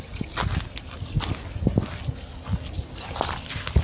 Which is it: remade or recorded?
recorded